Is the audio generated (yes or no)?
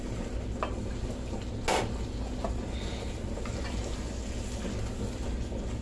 no